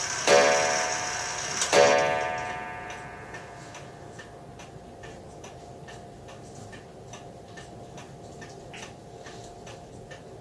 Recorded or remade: recorded